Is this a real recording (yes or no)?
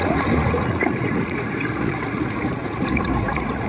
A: no